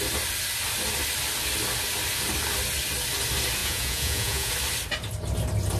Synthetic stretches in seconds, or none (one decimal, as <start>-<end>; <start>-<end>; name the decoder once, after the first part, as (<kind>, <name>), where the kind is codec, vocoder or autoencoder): 3.6-4.5 (vocoder, Vocos)